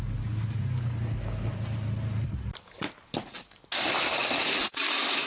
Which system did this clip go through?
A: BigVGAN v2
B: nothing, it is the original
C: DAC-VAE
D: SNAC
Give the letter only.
B